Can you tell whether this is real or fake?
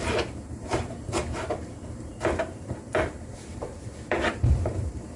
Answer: fake